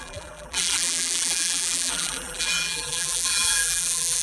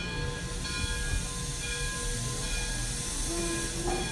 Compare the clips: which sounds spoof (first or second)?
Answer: first